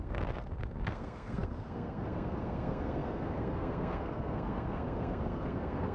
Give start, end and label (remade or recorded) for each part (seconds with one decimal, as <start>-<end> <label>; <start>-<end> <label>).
0.0-5.9 remade